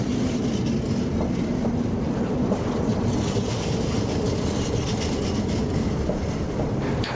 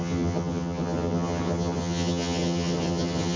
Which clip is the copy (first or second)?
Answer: second